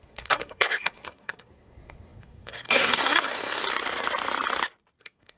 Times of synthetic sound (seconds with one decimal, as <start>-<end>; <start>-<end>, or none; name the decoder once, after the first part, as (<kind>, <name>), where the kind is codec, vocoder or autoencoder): 0.0-3.6 (codec, SNAC); 5.0-5.4